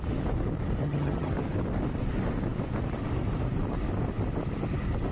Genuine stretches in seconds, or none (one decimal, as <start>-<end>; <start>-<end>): 0.0-0.8; 1.3-5.1